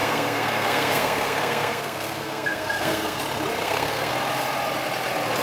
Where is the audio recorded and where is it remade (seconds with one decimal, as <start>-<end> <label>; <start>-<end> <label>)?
0.0-3.2 remade; 3.2-3.6 recorded; 3.6-4.1 remade; 4.1-5.4 recorded